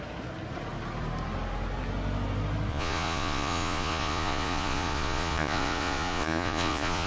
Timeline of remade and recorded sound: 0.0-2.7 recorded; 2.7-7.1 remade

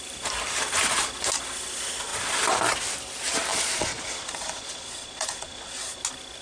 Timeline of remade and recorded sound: 0.0-3.5 recorded; 3.5-6.0 remade; 6.0-6.4 recorded

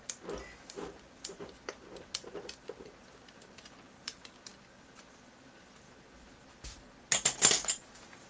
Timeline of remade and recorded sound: 0.0-8.3 recorded

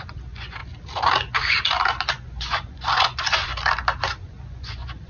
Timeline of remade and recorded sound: 0.0-0.6 remade; 0.6-2.1 recorded; 2.1-3.5 remade; 3.5-4.2 recorded; 4.2-5.1 remade

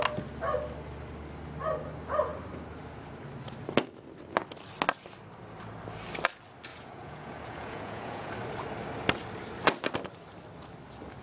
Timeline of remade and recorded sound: 0.0-6.7 recorded; 6.7-8.3 remade; 8.3-11.2 recorded